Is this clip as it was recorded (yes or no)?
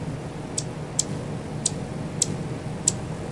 yes